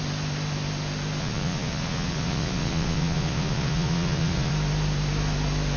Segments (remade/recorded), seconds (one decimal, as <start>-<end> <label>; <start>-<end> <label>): 0.0-1.2 recorded; 1.2-4.5 remade; 4.5-5.8 recorded